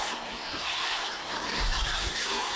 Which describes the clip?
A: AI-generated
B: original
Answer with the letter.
A